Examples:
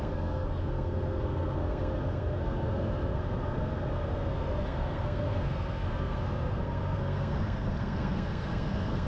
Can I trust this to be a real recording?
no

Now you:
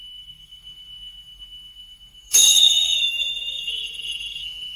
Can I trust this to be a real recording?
no